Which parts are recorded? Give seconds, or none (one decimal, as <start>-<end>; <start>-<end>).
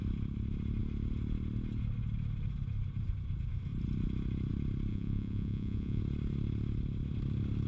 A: 0.0-4.9; 6.0-7.7